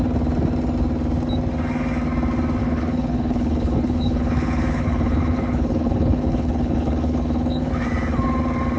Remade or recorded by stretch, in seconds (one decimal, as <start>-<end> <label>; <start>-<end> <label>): 0.0-2.6 recorded; 2.6-7.7 remade; 7.7-8.8 recorded